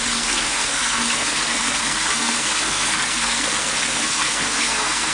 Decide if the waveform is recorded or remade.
remade